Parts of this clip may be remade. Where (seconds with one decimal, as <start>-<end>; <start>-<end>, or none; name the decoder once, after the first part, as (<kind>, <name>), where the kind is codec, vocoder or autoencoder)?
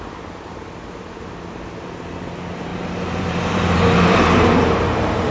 2.7-5.3 (vocoder, BigVGAN v2)